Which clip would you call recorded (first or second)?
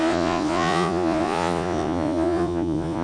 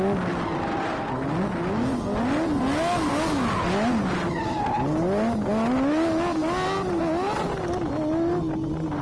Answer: second